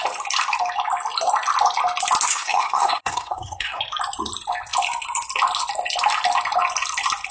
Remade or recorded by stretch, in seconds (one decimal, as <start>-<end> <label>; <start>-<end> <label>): 0.0-2.3 recorded; 2.3-3.8 remade; 3.8-7.3 recorded